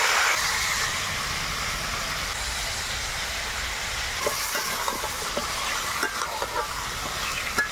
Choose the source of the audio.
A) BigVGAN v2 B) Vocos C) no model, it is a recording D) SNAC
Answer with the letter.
C